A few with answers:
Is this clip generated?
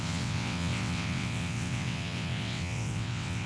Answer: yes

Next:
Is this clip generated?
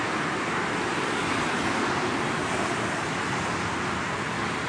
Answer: no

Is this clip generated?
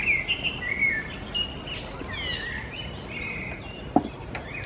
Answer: no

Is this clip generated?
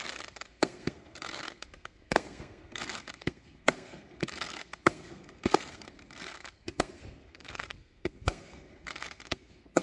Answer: yes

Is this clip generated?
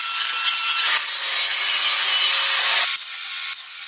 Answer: no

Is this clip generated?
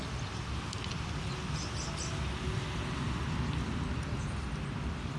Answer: no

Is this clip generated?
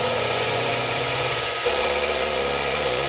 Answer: yes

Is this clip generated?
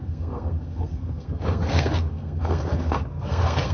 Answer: yes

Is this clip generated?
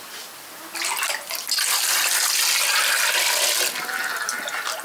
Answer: no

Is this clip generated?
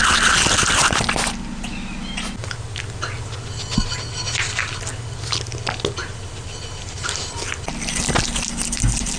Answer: no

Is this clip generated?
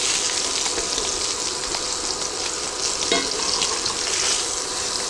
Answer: no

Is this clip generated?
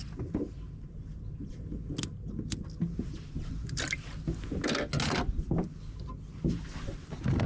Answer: no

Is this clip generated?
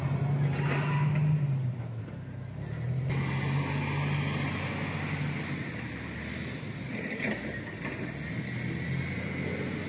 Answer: no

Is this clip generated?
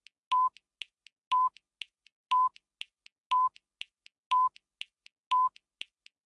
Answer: no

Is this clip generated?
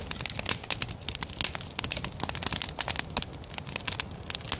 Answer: no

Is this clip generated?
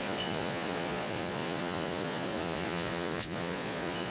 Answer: yes